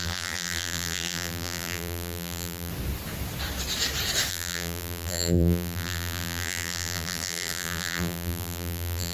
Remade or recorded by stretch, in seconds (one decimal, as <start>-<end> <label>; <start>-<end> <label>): 0.0-2.7 remade; 2.7-4.3 recorded; 4.3-9.1 remade